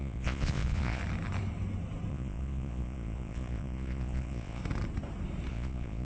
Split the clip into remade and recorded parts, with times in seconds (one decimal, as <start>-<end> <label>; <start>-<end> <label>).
0.0-1.0 remade; 1.0-2.1 recorded; 2.1-4.6 remade; 4.6-5.5 recorded; 5.5-6.0 remade